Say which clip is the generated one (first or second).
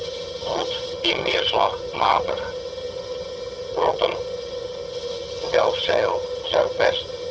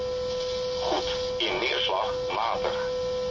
first